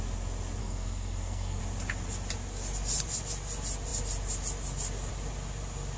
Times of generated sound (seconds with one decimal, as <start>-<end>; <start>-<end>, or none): 0.6-1.6